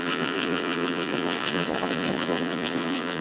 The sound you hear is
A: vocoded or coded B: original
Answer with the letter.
A